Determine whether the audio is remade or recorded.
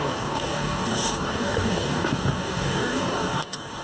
remade